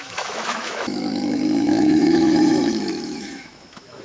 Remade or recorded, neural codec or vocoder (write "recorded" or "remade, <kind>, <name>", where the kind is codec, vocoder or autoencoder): remade, autoencoder, DAC-VAE